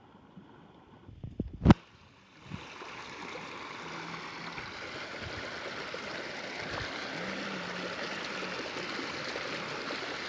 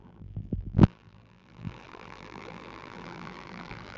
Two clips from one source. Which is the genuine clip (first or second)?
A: first